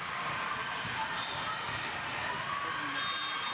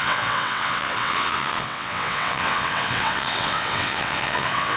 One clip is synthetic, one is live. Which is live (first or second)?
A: first